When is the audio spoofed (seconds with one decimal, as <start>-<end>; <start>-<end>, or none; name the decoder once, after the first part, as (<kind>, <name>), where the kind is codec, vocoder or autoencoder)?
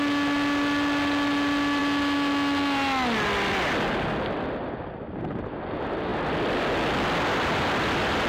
none